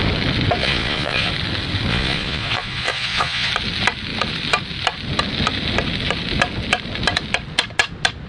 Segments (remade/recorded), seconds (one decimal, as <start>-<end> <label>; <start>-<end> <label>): 0.0-0.6 recorded; 0.6-1.3 remade; 1.3-1.9 recorded; 1.9-3.5 remade; 3.5-8.3 recorded